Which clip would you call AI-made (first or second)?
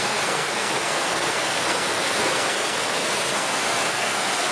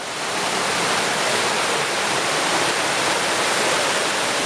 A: first